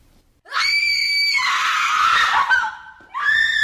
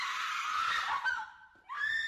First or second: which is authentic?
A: first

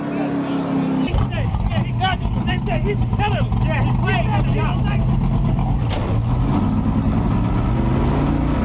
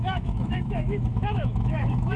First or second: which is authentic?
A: first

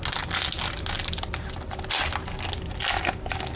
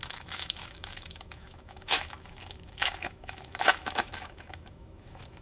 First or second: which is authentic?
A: first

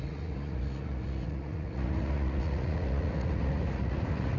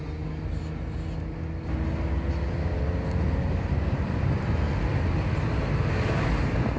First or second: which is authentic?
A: second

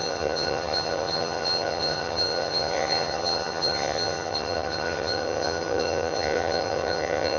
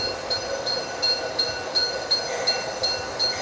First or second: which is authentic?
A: second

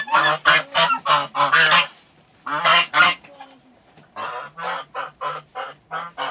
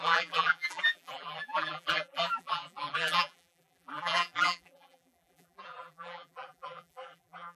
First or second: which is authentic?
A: first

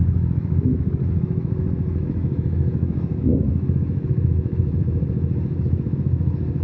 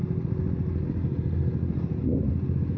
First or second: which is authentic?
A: second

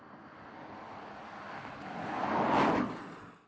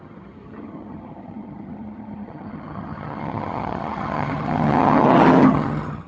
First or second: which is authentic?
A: first